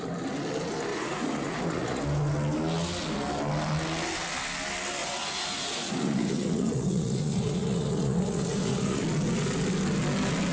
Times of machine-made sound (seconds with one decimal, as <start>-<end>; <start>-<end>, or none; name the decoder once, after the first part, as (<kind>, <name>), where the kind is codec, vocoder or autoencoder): 0.9-2.0 (vocoder, Vocos); 5.0-9.0